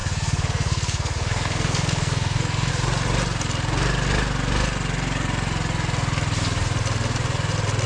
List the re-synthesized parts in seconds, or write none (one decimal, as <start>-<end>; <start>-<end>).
0.0-2.7